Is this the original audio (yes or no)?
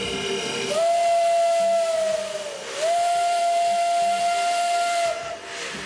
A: yes